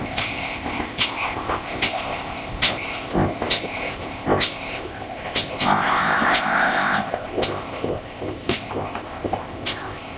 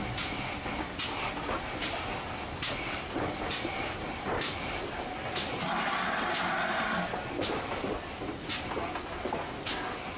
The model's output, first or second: first